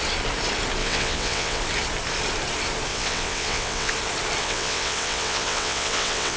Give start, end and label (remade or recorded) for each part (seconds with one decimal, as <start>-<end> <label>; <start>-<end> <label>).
0.0-0.8 recorded; 0.8-1.6 remade; 1.6-2.9 recorded; 2.9-3.9 remade; 3.9-4.4 recorded; 4.4-6.4 remade